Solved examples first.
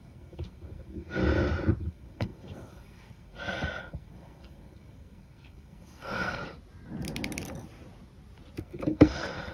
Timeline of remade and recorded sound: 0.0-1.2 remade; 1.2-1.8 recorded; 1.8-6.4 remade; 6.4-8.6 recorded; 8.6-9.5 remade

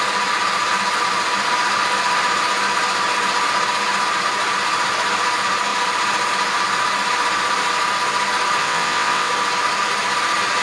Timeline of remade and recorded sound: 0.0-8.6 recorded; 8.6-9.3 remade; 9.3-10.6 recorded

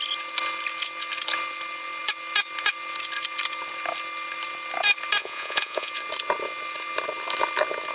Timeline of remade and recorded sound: 0.0-5.2 recorded; 5.2-5.9 remade; 5.9-7.9 recorded

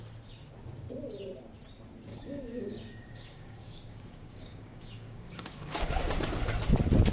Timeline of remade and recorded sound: 0.0-2.1 recorded; 2.1-6.0 remade; 6.0-7.1 recorded